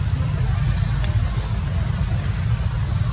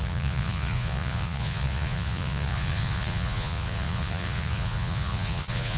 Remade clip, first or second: second